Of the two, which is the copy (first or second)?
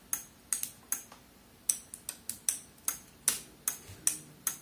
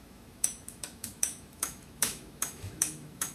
second